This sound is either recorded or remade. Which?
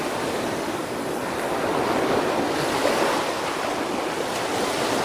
recorded